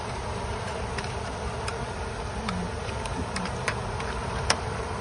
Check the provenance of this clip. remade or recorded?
remade